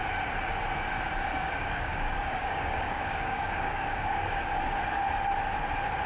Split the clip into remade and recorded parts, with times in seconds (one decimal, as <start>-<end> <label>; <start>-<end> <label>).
0.0-1.3 recorded; 1.3-5.0 remade; 5.0-6.1 recorded